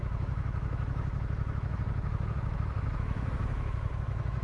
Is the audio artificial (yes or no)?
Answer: yes